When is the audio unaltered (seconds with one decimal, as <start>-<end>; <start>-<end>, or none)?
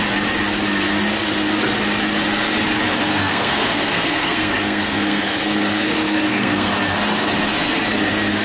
0.0-3.1; 6.7-8.4